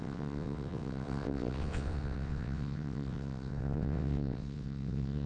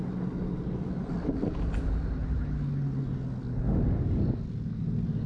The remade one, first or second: first